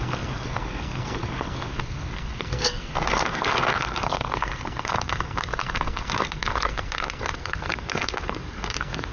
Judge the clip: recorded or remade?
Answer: remade